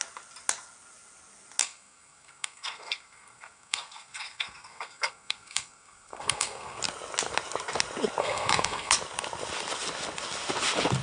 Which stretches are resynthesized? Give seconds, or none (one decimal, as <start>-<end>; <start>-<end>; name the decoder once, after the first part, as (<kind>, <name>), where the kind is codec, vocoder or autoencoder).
1.6-6.8 (codec, SNAC); 8.2-8.9